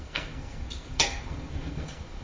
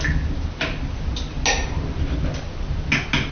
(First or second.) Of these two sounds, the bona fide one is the second